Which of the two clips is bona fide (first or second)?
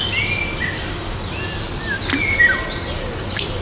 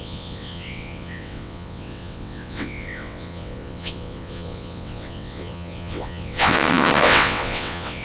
first